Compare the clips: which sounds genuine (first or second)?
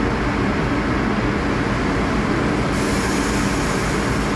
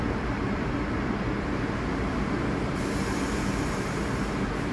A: first